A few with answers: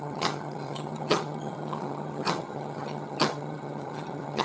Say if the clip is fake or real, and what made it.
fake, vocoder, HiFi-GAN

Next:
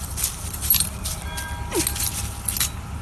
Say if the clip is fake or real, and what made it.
real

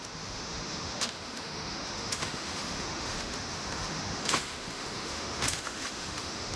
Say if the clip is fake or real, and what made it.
fake, autoencoder, DAC-VAE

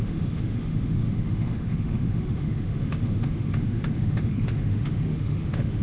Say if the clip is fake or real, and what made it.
fake, autoencoder, DAC-VAE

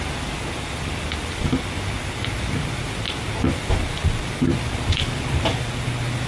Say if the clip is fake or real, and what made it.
real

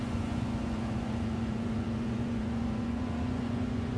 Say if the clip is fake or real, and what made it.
fake, vocoder, Vocos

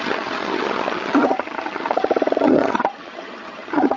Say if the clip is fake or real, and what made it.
fake, vocoder, HiFi-GAN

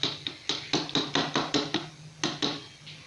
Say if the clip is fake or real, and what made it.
real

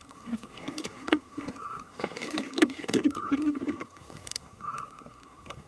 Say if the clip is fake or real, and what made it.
fake, codec, SNAC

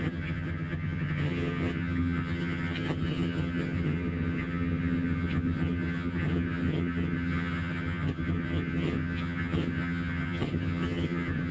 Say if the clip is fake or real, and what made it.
fake, vocoder, HiFi-GAN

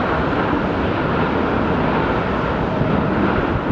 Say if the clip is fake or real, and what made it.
real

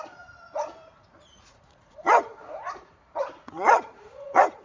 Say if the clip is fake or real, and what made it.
fake, vocoder, Vocos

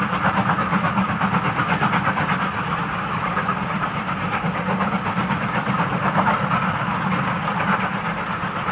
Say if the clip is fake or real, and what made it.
real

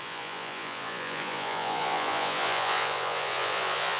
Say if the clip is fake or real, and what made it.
fake, vocoder, Vocos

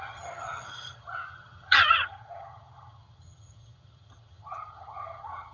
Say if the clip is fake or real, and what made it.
fake, vocoder, HiFi-GAN